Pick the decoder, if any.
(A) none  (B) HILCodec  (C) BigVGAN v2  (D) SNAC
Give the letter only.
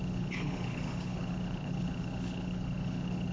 B